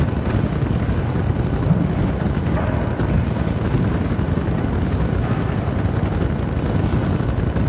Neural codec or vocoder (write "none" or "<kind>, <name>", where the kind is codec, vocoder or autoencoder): none